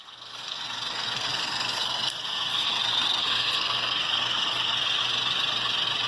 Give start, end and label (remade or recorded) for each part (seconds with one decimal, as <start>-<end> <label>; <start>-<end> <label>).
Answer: 0.0-5.0 remade; 5.0-6.1 recorded